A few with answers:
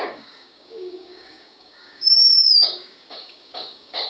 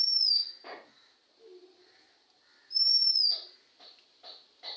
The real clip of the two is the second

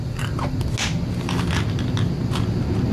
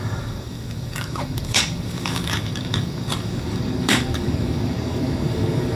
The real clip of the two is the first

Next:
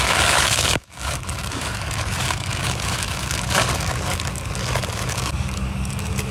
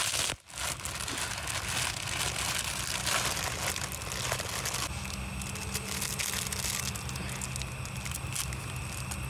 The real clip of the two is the second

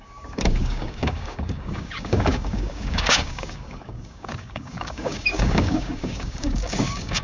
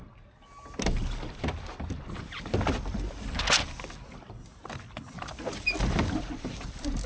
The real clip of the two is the second